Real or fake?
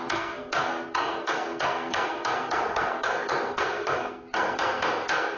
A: fake